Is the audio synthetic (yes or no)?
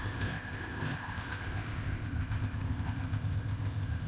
yes